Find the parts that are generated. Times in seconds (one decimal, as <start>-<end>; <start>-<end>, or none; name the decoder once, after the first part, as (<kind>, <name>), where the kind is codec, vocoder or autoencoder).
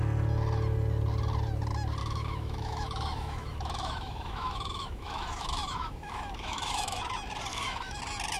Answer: 2.0-7.0 (autoencoder, DAC-VAE); 7.5-8.0